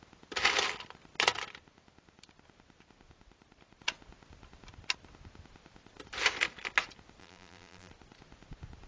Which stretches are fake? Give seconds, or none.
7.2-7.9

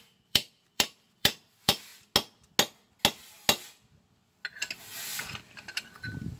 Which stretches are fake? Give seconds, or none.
0.0-1.9; 5.4-6.4

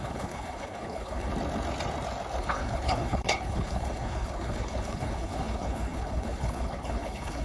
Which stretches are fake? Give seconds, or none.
0.0-1.3; 2.4-7.4

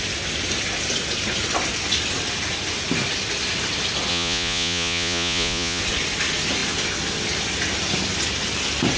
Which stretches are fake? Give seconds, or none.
4.1-5.8

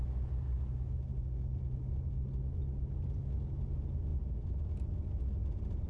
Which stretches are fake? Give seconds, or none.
none